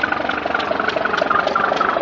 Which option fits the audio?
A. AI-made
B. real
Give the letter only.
B